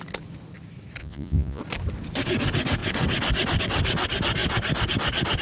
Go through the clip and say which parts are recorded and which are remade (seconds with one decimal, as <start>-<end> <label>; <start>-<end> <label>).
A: 0.0-1.0 recorded; 1.0-1.6 remade; 1.6-5.4 recorded